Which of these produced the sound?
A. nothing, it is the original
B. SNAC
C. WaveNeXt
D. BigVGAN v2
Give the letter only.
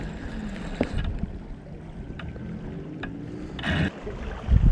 A